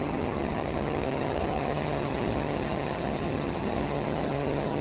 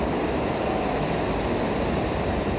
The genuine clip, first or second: second